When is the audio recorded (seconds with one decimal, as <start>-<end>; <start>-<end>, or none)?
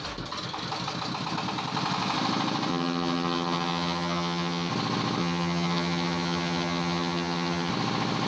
0.0-2.7; 4.7-5.2; 7.7-8.3